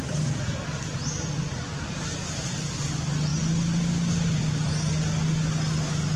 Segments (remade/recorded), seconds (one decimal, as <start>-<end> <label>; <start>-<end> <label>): 0.0-6.2 recorded